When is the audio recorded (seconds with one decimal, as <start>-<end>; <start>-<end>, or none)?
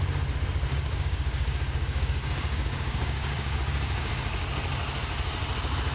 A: 0.0-0.7; 4.1-5.9